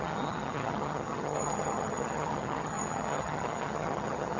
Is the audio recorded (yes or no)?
no